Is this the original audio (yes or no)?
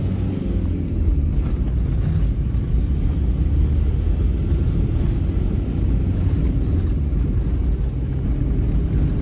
yes